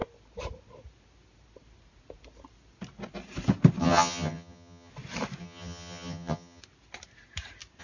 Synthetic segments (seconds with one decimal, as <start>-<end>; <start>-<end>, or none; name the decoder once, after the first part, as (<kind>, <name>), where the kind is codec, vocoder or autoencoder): 3.8-4.9 (vocoder, HiFi-GAN); 5.4-6.6